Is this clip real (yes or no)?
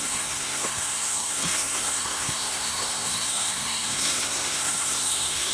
no